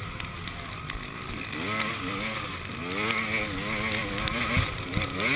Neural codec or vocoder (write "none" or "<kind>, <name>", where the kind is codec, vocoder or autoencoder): none